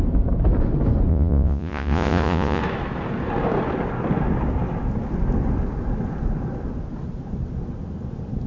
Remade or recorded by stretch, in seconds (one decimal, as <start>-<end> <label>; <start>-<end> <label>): 0.0-1.1 recorded; 1.1-2.6 remade; 2.6-8.5 recorded